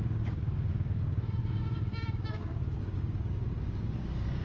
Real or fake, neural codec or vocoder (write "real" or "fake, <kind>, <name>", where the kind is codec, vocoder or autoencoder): fake, codec, DAC